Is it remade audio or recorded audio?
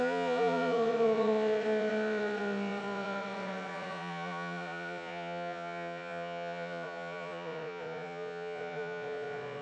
remade